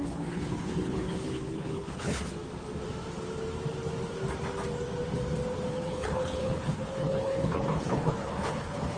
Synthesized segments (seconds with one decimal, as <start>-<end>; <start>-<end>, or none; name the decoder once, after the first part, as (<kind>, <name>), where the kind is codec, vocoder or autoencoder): 0.0-2.3 (codec, HILCodec); 5.7-9.0